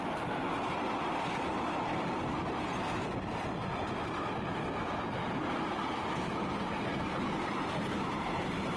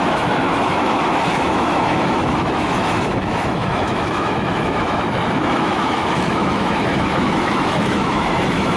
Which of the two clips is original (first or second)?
first